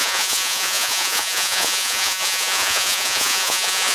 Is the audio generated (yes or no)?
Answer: yes